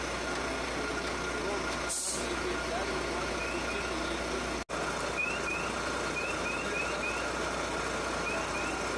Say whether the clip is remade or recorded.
recorded